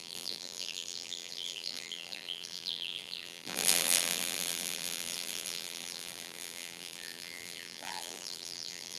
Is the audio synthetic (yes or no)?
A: yes